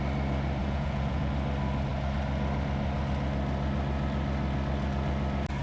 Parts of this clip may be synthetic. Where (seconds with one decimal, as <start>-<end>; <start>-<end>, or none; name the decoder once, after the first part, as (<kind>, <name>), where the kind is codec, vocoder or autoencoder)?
0.6-1.3 (vocoder, Vocos)